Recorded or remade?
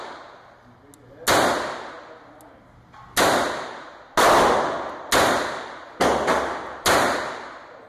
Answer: recorded